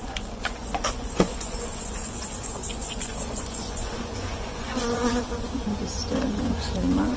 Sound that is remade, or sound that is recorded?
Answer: remade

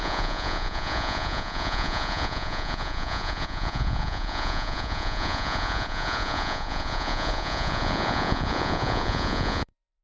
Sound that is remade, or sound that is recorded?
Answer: remade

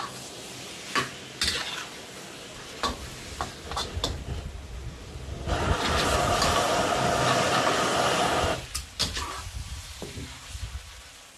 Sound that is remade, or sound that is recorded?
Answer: recorded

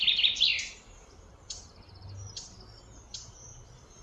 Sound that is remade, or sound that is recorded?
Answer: recorded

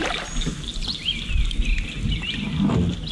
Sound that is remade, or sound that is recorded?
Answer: recorded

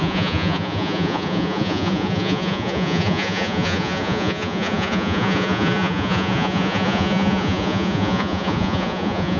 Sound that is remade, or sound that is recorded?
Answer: remade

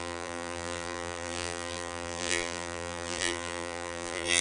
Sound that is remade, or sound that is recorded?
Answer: remade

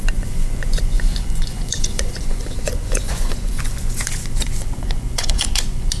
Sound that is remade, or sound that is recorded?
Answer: remade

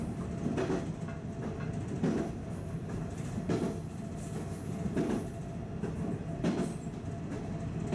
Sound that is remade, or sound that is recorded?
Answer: recorded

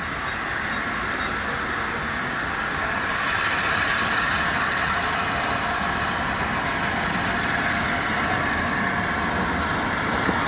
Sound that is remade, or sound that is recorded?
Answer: recorded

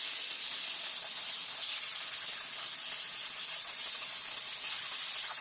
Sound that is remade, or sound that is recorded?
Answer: recorded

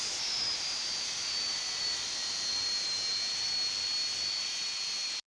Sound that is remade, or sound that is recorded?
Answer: recorded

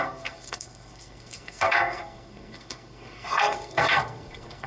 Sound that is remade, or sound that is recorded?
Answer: remade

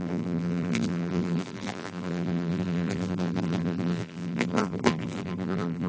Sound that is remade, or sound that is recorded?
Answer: remade